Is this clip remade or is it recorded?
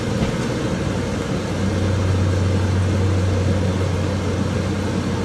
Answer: recorded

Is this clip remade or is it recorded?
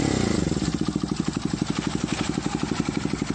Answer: remade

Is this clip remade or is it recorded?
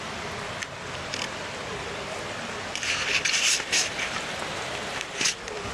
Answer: remade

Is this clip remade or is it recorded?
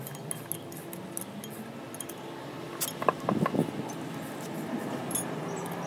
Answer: recorded